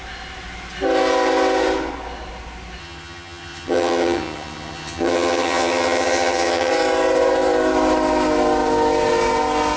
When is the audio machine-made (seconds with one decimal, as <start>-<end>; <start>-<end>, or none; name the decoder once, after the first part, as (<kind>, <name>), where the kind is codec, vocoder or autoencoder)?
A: 2.8-6.7 (vocoder, HiFi-GAN)